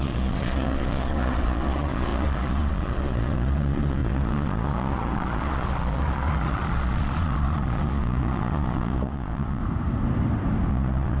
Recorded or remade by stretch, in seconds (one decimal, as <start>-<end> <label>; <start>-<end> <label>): 0.0-9.6 remade; 9.6-10.7 recorded; 10.7-11.2 remade